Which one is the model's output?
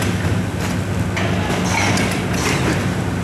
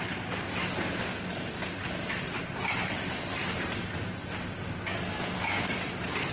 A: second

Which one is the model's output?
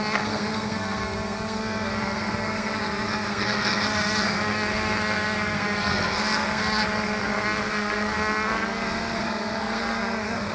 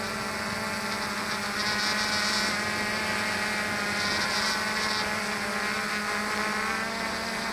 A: first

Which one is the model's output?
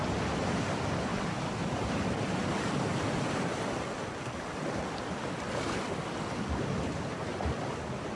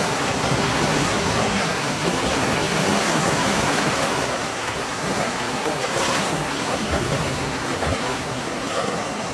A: second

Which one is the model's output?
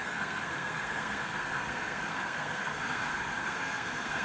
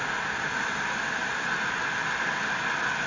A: first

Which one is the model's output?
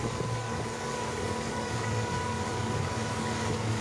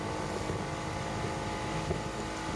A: first